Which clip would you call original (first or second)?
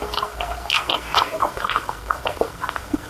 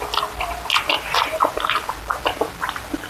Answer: second